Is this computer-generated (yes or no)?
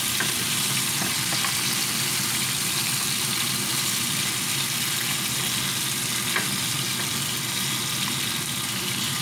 no